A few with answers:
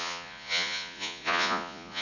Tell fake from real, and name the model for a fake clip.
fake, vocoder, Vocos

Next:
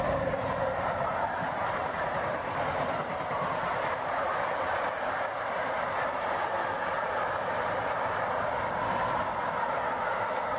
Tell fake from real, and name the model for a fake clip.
real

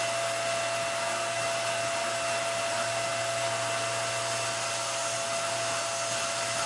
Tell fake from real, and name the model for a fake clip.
real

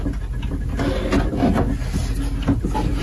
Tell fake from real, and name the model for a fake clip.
real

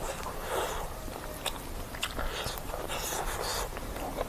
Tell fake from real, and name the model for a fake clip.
real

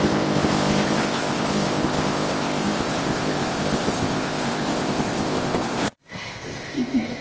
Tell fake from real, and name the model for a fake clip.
fake, codec, ZipCodec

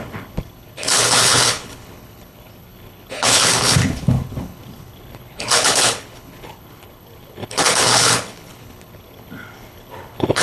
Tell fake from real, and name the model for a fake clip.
fake, codec, HILCodec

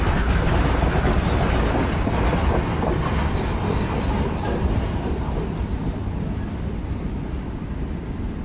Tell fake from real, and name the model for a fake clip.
real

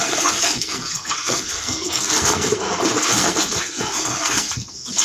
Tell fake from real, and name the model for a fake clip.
fake, codec, SNAC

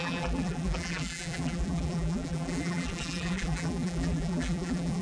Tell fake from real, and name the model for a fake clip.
fake, vocoder, BigVGAN v2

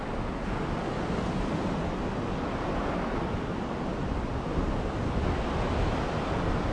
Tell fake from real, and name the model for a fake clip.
real